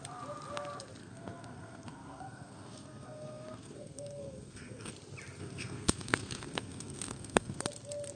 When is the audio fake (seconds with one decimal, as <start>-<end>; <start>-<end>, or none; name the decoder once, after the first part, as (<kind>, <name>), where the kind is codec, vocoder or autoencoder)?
1.0-4.9 (codec, SNAC); 5.4-7.6